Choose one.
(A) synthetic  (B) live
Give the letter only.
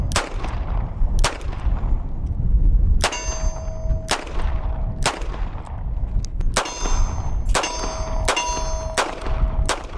B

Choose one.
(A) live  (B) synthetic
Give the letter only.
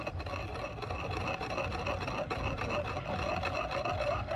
A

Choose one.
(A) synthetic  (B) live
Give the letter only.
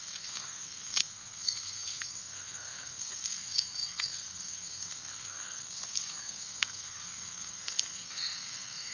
A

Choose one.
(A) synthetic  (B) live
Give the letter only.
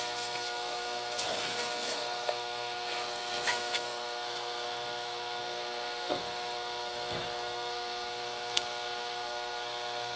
A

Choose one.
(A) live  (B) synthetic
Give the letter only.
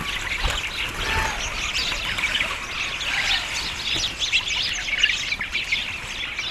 A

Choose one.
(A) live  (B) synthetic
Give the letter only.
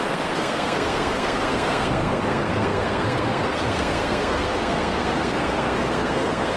B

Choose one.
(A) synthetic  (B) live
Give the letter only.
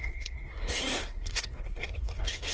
A